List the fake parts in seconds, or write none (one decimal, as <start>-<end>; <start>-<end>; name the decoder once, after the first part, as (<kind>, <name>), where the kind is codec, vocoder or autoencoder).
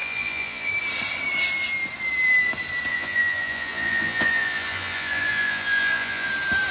0.0-0.7 (vocoder, Vocos); 2.9-6.3